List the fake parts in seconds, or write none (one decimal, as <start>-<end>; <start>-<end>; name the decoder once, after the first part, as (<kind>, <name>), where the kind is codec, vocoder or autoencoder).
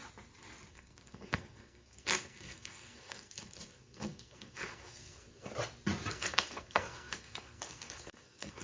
0.7-5.5 (codec, SNAC); 6.1-8.6